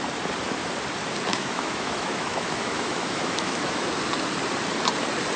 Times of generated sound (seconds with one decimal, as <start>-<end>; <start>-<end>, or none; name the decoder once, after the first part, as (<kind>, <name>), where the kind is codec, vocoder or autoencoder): 1.3-3.9 (autoencoder, DAC-VAE)